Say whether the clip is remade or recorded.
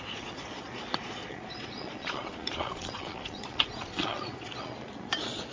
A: remade